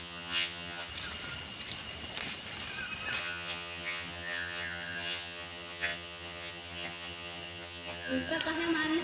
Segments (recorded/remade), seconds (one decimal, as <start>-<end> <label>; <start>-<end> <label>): 0.0-0.9 remade; 0.9-3.2 recorded; 3.2-8.3 remade; 8.3-9.0 recorded

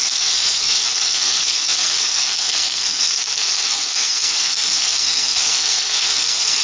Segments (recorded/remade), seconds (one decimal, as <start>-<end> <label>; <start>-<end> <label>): 0.0-6.6 remade